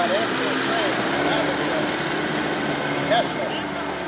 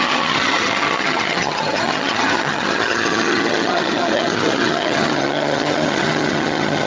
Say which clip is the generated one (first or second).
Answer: second